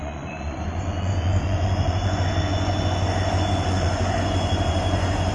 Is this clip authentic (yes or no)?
no